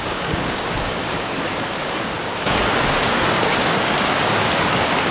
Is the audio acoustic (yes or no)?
no